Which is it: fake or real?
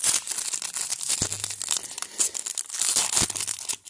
real